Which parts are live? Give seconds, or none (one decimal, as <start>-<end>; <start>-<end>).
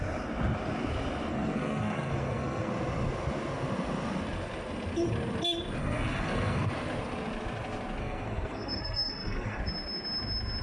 0.0-1.3; 2.7-5.8; 6.7-8.0; 9.6-10.6